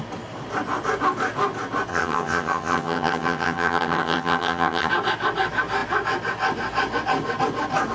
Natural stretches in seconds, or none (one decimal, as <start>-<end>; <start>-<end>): 0.0-1.9; 4.9-7.9